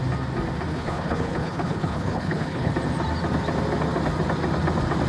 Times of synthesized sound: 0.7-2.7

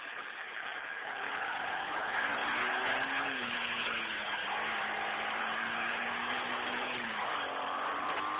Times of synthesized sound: 0.0-4.4; 5.4-7.3

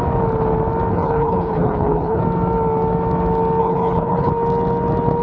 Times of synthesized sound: 0.9-2.2; 3.6-4.3

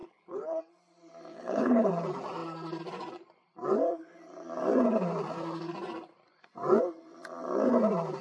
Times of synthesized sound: 0.0-0.6; 1.3-1.9

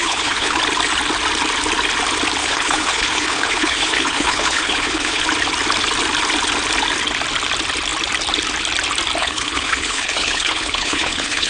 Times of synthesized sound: 0.0-0.6; 2.4-5.2; 9.2-11.5